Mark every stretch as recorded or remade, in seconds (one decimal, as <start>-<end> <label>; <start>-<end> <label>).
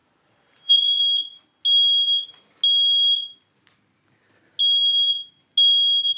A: 0.0-1.0 remade; 1.0-6.2 recorded